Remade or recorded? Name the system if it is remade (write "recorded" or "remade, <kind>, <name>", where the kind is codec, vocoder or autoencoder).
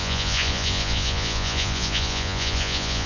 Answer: remade, vocoder, Vocos